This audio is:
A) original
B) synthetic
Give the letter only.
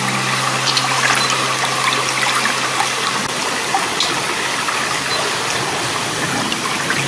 A